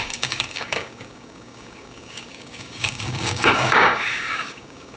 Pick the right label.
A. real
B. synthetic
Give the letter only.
B